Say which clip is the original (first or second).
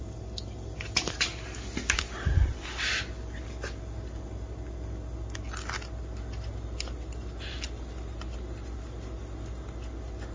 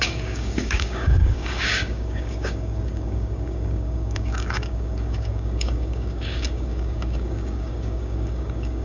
first